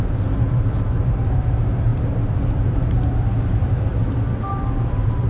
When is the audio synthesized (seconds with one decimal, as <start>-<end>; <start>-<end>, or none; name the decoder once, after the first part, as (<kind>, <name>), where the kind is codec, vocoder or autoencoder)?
0.0-3.9 (vocoder, BigVGAN v2); 4.5-5.3